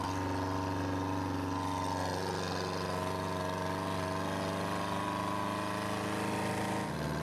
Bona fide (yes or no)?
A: yes